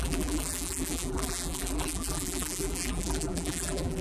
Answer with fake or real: fake